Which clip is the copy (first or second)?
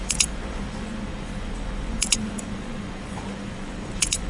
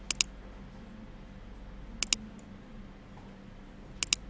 first